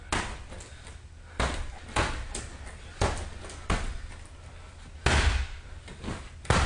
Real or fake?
real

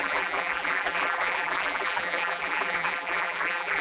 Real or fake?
fake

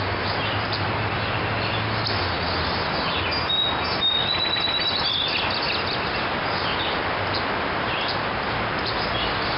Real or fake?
real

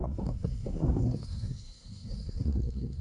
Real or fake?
fake